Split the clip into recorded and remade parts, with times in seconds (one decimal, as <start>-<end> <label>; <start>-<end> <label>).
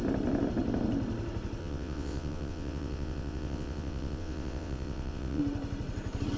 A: 0.0-1.6 recorded; 1.6-5.4 remade; 5.4-6.4 recorded